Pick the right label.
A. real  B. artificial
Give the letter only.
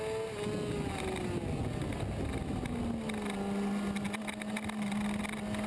A